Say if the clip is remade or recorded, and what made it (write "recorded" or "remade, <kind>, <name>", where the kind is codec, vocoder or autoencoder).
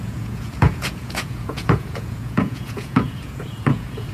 remade, vocoder, Vocos